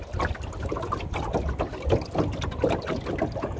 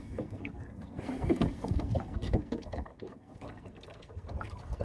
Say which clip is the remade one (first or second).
second